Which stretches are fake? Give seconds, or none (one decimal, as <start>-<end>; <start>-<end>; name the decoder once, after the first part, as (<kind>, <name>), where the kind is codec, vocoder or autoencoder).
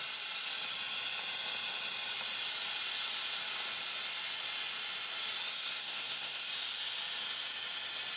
5.5-6.5 (codec, SNAC)